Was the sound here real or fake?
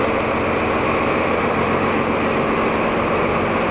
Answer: real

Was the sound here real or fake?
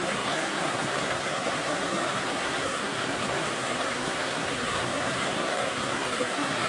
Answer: fake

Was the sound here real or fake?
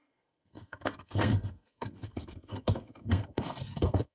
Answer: fake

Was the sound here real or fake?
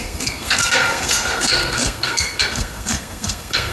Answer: fake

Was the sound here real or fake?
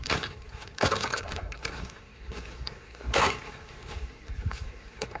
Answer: fake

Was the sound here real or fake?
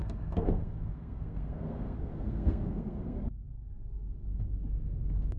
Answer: fake